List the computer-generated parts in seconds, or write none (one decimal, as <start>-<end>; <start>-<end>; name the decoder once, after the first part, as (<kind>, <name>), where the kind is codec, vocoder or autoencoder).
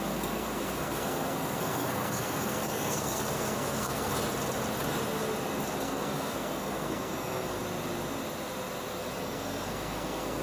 0.0-4.1 (codec, SNAC); 5.8-7.6; 9.2-10.4